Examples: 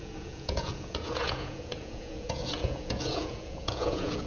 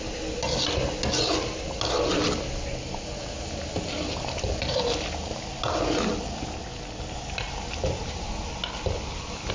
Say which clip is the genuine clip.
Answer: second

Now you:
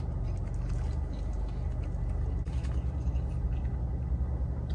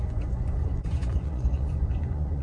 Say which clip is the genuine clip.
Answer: first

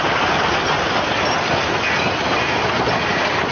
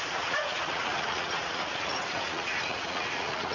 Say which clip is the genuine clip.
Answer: first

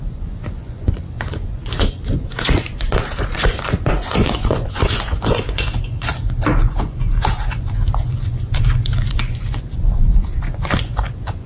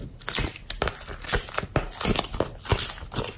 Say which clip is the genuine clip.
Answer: second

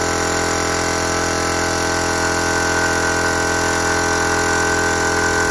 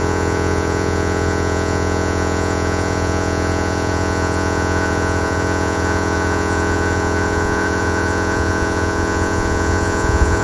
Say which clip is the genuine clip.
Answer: first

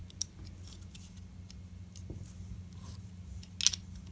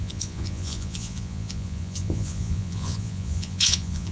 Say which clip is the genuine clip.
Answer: first